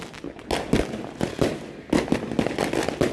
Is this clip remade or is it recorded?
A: recorded